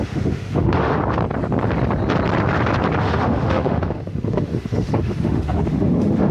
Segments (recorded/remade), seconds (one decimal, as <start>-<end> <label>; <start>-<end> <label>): 0.0-1.0 remade; 1.0-3.0 recorded; 3.0-6.3 remade